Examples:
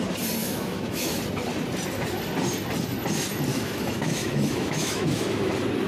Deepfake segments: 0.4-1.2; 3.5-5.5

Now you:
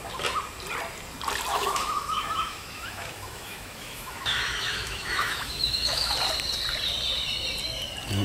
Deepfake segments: 1.5-6.1

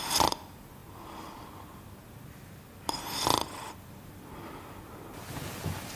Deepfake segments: none

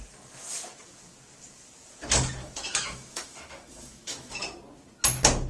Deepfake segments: 2.4-4.4